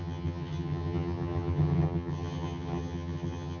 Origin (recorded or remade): remade